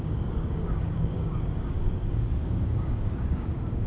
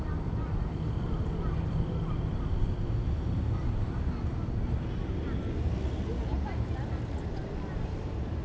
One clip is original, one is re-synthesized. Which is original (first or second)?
second